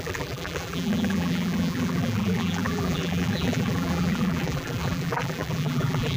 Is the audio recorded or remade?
remade